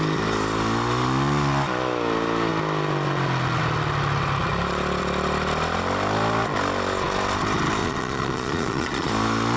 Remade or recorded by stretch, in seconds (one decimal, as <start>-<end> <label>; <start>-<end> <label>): 0.0-7.8 recorded; 7.8-9.1 remade; 9.1-9.6 recorded